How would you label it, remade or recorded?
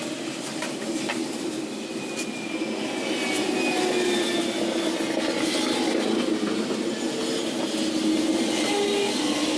recorded